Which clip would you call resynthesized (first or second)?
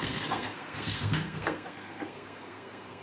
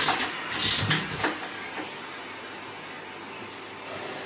first